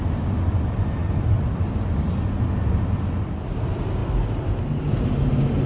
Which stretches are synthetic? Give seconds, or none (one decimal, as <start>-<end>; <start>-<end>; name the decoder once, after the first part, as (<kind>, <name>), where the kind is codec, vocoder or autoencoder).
none